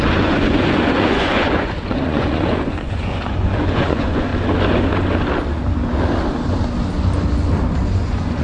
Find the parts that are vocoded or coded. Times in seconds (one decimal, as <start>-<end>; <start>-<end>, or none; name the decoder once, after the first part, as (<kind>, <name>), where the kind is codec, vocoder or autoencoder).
0.0-4.3 (vocoder, Vocos); 7.9-8.4